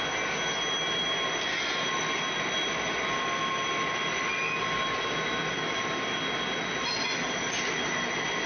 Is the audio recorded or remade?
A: recorded